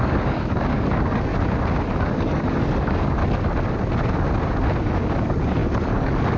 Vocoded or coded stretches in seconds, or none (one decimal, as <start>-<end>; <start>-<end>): 0.0-1.3; 1.9-3.2; 4.8-6.4